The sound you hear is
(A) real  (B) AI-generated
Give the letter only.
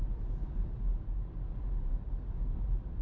A